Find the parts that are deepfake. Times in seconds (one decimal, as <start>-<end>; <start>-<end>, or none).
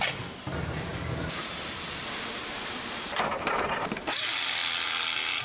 0.0-4.6